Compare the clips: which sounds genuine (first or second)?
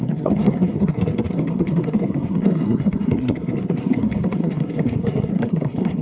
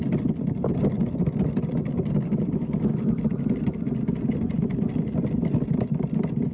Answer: second